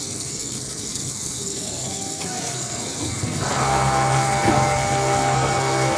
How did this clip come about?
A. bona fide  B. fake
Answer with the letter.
B